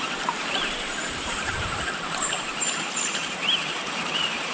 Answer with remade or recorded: remade